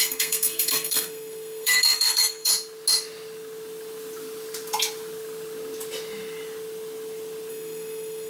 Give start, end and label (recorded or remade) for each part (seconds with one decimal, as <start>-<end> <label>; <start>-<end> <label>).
0.0-2.5 remade; 2.5-7.5 recorded; 7.5-8.3 remade